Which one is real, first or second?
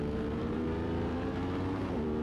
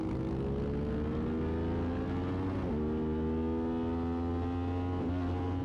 second